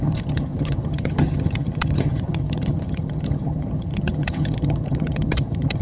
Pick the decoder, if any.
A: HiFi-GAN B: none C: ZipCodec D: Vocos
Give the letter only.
A